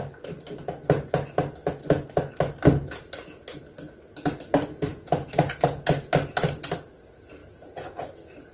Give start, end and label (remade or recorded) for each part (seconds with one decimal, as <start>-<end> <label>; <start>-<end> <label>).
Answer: 0.0-4.9 recorded; 4.9-5.8 remade; 5.8-7.4 recorded; 7.4-8.1 remade; 8.1-8.5 recorded